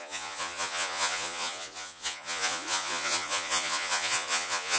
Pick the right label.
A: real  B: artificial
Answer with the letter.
B